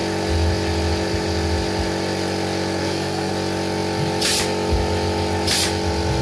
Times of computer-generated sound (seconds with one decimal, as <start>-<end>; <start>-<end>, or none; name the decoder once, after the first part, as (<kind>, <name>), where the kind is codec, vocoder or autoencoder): 2.8-3.3 (codec, SNAC)

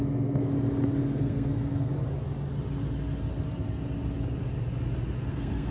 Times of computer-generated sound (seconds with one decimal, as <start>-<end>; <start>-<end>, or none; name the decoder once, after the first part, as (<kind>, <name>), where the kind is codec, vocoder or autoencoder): 0.0-0.5 (codec, SNAC); 1.0-1.9; 5.3-5.7